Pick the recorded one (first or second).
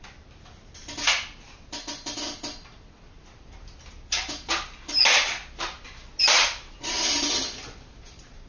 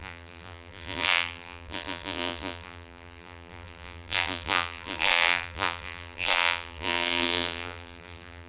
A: first